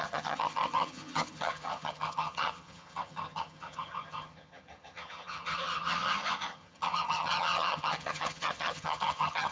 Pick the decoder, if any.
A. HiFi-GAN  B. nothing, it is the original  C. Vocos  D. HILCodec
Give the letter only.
A